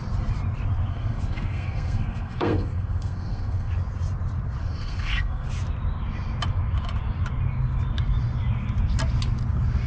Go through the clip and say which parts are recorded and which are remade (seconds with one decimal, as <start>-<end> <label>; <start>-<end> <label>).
0.0-0.9 recorded; 0.9-3.7 remade; 3.7-4.6 recorded; 4.6-5.5 remade; 5.5-9.9 recorded